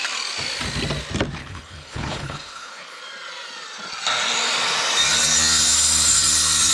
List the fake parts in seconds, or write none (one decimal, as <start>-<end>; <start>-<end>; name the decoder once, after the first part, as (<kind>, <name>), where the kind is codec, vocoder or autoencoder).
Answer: 1.4-3.0 (codec, HILCodec)